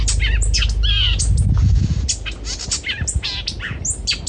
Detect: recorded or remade recorded